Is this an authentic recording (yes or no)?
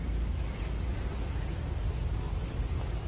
yes